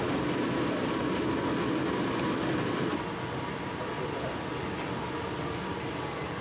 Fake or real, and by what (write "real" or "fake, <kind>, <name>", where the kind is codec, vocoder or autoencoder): real